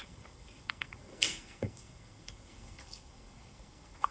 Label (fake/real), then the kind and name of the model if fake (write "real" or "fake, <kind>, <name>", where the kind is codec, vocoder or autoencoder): fake, codec, SNAC